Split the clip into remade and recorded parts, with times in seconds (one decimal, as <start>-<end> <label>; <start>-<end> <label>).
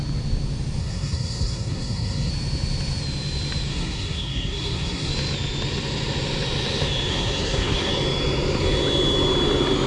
0.0-0.8 recorded; 0.8-2.3 remade; 2.3-3.7 recorded; 3.7-5.1 remade; 5.1-7.1 recorded; 7.1-7.9 remade; 7.9-9.9 recorded